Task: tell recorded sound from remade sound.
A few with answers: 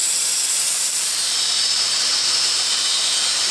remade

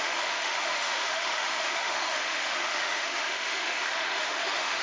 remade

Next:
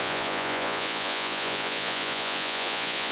remade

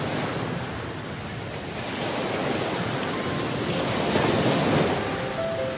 recorded